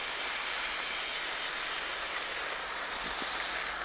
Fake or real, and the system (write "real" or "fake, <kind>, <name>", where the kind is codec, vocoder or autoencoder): real